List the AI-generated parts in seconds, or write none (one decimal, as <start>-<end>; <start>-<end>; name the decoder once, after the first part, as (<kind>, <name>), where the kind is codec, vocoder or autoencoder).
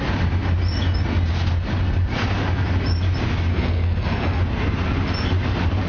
3.5-4.4 (codec, SNAC)